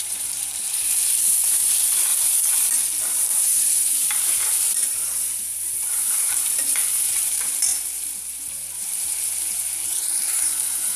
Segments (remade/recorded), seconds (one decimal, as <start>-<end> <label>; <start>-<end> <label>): 0.0-2.1 remade; 2.1-3.0 recorded; 3.0-11.0 remade